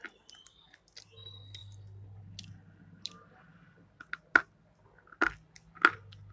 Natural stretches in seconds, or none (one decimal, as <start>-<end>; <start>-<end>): 0.0-6.3